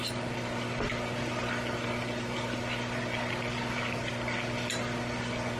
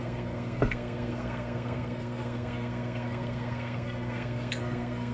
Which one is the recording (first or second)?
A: first